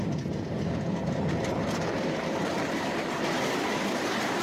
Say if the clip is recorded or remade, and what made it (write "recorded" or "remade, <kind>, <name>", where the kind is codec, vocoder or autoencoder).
recorded